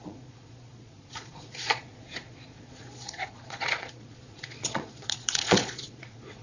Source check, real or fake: fake